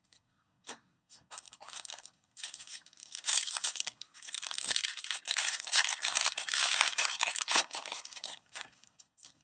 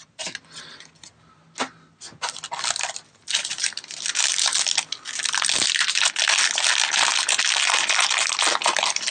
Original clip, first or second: second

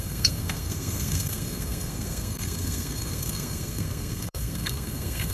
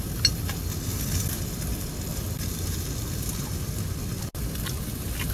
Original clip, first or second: second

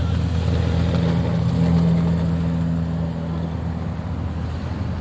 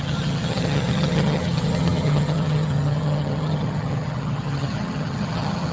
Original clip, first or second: first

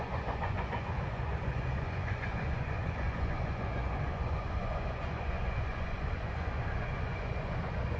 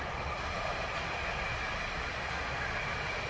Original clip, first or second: second